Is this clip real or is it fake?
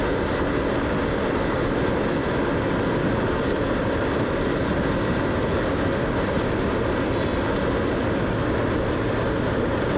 real